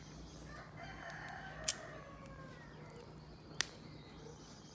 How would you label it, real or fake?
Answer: real